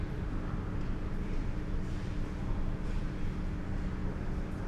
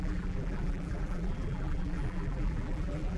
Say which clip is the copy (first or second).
second